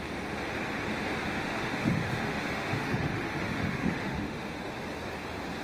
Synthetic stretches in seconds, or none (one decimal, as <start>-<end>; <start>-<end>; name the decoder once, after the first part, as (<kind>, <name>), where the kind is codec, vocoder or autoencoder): 1.4-4.8 (autoencoder, DAC-VAE)